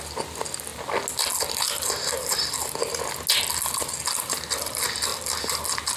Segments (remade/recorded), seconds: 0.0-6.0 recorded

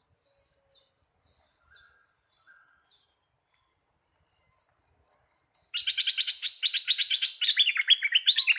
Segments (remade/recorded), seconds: 0.0-8.6 recorded

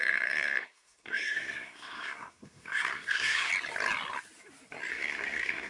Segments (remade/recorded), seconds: 0.0-3.5 remade; 3.5-4.9 recorded; 4.9-5.7 remade

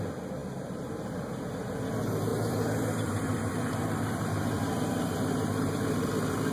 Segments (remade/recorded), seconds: 0.0-0.4 recorded; 0.4-1.1 remade; 1.1-2.3 recorded; 2.3-6.1 remade; 6.1-6.5 recorded

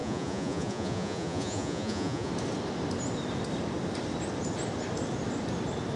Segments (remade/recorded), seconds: 0.0-2.3 remade; 2.3-6.0 recorded